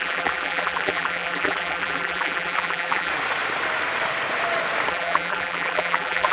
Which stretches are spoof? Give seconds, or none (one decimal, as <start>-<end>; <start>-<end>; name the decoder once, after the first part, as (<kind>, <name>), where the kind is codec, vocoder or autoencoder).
0.0-3.1 (vocoder, BigVGAN v2); 4.9-6.3